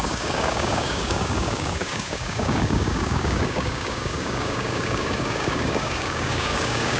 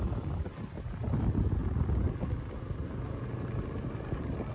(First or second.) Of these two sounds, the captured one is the second